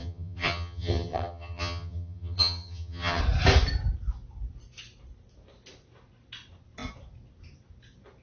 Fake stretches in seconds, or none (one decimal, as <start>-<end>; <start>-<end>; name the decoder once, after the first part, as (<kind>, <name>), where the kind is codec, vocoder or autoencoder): 0.0-3.2 (vocoder, HiFi-GAN)